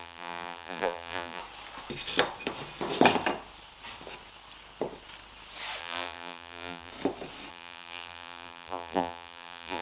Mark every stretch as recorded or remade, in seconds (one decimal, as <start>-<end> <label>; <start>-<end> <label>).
0.0-1.4 remade; 1.4-5.8 recorded; 5.8-6.9 remade; 6.9-7.5 recorded; 7.5-9.8 remade